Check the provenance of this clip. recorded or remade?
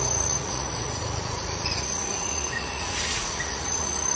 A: remade